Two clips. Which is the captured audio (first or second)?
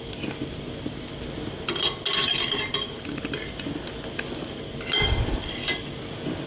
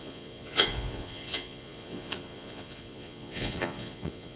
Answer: first